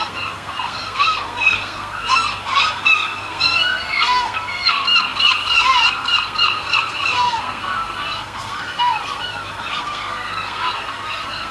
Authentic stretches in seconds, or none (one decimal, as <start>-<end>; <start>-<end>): none